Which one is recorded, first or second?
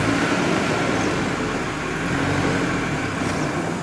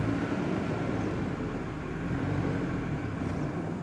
first